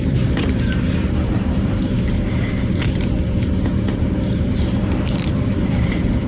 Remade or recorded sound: remade